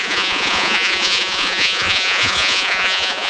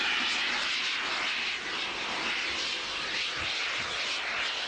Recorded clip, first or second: second